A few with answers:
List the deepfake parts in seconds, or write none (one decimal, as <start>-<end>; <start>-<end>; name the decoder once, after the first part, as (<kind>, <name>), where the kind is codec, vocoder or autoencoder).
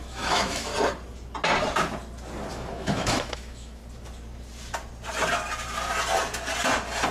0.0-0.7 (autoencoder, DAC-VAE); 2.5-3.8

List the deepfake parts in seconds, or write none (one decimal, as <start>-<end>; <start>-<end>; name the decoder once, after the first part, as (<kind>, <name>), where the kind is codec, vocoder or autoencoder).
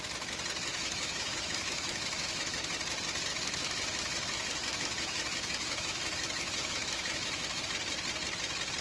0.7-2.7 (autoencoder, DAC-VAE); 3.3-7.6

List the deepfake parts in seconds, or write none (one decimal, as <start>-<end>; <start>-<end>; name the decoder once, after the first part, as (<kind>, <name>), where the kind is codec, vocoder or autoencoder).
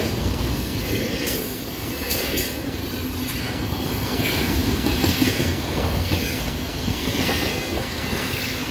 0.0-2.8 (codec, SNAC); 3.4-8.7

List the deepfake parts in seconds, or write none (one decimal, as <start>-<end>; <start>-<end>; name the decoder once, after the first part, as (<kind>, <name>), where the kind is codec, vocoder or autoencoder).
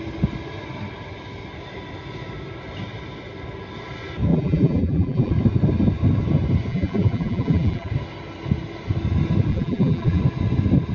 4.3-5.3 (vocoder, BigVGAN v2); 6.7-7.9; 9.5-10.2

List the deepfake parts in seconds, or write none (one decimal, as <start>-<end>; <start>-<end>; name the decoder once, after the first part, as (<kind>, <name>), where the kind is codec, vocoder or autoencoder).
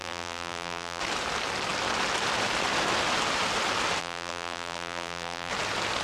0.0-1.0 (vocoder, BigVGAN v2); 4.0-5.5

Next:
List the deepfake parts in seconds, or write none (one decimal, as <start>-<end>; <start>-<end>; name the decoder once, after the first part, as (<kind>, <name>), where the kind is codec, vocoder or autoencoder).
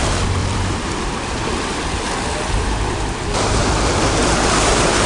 0.4-2.1 (vocoder, BigVGAN v2)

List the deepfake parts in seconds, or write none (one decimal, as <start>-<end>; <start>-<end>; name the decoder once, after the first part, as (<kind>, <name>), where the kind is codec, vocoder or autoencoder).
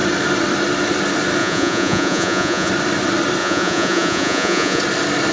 1.4-2.7 (vocoder, Vocos); 3.4-4.8